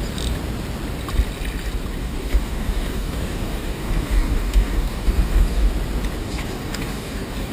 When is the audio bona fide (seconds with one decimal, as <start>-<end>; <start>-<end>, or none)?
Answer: 0.0-2.0; 5.7-6.2